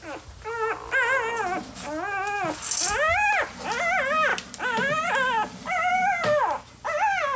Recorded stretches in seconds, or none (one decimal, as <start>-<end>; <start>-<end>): 0.0-7.4